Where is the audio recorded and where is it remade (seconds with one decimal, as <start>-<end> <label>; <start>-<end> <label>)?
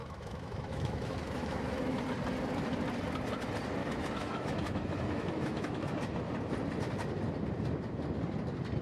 0.0-2.0 remade; 2.0-3.8 recorded; 3.8-5.9 remade; 5.9-8.8 recorded